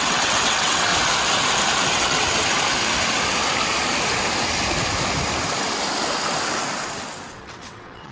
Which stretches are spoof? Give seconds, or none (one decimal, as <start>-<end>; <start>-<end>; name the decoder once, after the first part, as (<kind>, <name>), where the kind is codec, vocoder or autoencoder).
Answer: 0.0-0.9 (vocoder, WaveNeXt); 1.9-2.4; 7.3-8.1